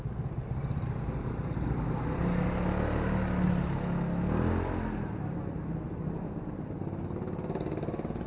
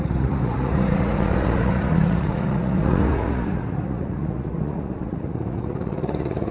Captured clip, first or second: first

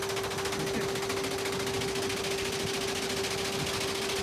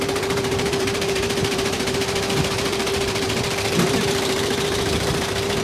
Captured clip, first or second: first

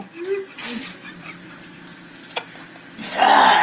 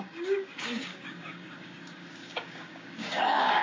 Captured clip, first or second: first